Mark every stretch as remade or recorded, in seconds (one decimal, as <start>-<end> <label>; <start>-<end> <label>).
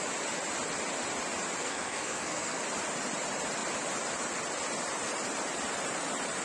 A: 0.0-1.6 recorded; 1.6-2.6 remade; 2.6-6.4 recorded